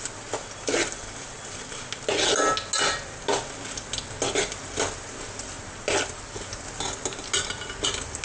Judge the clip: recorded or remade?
recorded